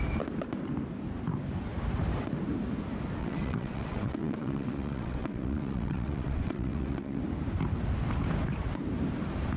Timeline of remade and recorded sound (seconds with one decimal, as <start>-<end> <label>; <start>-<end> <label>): 0.0-3.2 recorded; 3.2-7.2 remade; 7.2-9.6 recorded